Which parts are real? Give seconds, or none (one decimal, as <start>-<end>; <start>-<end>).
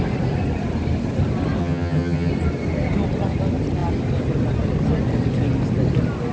0.0-1.6; 2.3-6.3